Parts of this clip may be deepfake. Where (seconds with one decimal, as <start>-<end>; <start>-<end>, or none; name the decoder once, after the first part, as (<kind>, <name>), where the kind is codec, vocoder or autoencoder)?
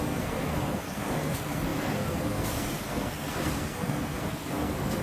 0.0-5.0 (codec, SNAC)